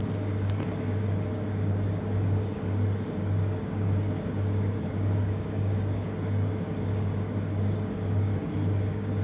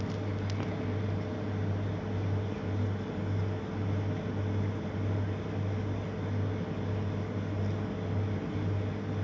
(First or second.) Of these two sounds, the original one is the second